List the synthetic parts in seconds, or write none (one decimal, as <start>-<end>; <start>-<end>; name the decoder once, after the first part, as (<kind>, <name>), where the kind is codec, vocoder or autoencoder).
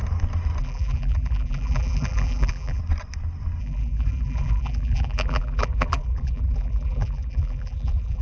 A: 0.6-2.8 (vocoder, BigVGAN v2); 3.6-8.2